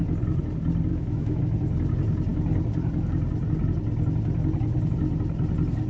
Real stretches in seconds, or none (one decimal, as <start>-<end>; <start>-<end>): 0.0-0.9; 1.4-5.9